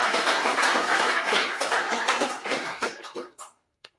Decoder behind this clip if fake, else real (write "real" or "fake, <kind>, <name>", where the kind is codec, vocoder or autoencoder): fake, codec, SNAC